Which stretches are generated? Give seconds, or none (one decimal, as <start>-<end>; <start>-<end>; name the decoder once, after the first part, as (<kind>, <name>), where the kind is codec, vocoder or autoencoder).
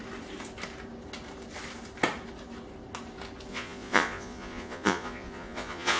3.5-6.0 (vocoder, Vocos)